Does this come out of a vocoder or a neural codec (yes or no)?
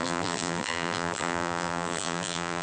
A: yes